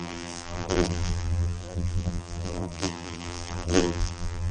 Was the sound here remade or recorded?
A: remade